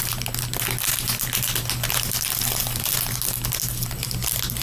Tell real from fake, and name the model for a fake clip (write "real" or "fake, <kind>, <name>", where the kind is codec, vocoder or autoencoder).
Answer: real